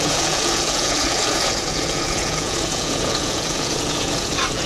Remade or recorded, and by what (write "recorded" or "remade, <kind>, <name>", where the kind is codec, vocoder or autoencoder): remade, vocoder, Vocos